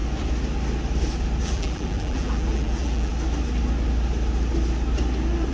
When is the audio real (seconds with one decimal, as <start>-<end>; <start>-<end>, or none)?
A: 0.0-1.4; 3.1-5.5